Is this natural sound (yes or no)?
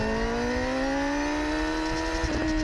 yes